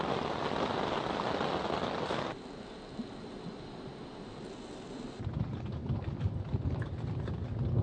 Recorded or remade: recorded